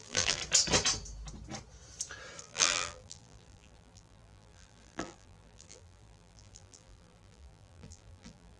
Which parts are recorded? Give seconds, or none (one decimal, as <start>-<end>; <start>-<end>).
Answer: 0.4-2.4